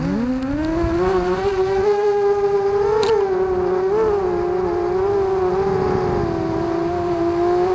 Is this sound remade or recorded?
recorded